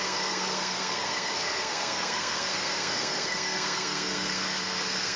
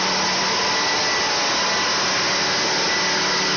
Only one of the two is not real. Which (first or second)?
first